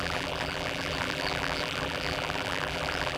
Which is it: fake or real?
fake